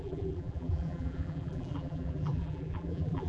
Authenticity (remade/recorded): remade